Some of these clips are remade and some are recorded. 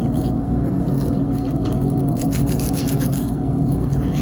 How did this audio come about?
remade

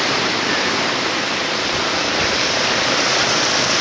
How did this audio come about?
recorded